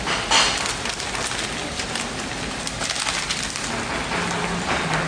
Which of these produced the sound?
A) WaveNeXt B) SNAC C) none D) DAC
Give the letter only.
C